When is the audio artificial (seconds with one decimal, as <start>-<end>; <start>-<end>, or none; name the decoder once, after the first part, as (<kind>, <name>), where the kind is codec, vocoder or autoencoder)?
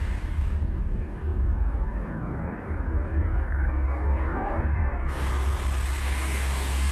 0.0-5.3 (codec, DAC); 6.0-6.9